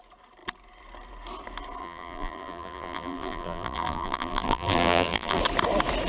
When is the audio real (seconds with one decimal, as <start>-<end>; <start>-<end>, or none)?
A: 0.0-1.8; 5.4-6.1